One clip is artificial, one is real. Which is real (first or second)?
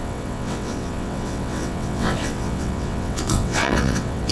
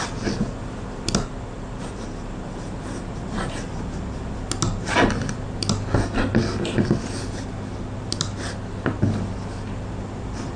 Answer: second